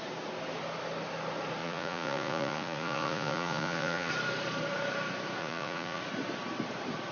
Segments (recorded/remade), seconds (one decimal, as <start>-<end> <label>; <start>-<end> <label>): 0.0-1.6 recorded; 1.6-4.1 remade; 4.1-5.4 recorded; 5.4-6.0 remade; 6.0-7.1 recorded